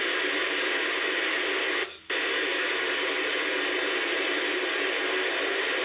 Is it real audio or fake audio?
real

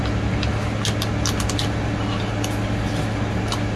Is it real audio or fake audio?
real